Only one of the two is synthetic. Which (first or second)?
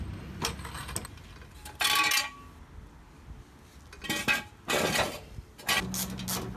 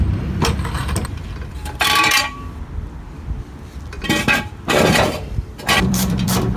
second